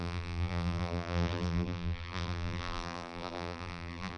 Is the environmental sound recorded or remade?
remade